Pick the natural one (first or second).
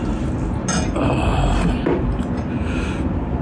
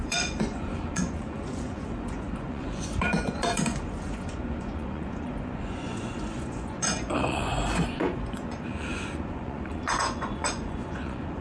first